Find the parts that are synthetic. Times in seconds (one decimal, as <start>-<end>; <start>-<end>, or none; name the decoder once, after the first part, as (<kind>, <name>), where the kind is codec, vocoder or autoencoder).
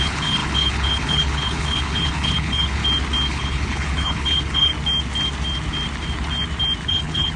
0.0-2.8 (codec, HILCodec); 3.3-4.7; 6.9-7.4